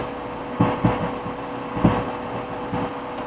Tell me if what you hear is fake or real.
real